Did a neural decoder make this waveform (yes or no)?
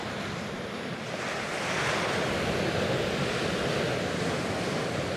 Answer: no